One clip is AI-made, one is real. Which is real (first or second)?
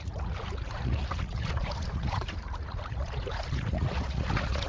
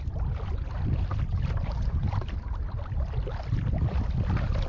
second